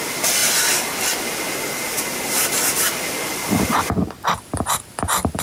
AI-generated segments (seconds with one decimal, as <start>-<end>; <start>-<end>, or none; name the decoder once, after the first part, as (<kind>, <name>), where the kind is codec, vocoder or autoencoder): none